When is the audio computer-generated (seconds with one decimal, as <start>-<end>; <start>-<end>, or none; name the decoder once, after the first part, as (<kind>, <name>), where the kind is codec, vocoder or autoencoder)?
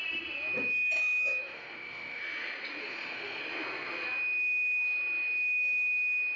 1.2-2.2 (autoencoder, DAC-VAE); 2.8-3.4